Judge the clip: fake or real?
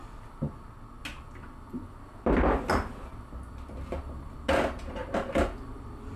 real